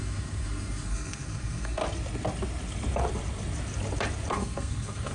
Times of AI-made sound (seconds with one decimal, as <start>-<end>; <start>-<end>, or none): 0.0-1.8; 4.3-5.1